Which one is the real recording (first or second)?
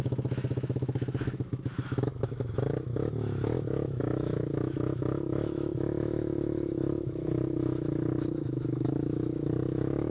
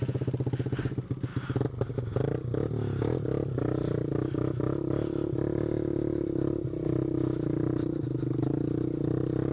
second